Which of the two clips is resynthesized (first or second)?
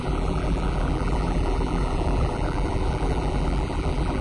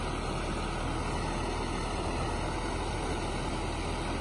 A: first